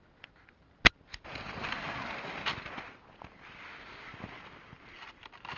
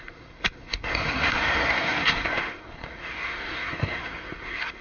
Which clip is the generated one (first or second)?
second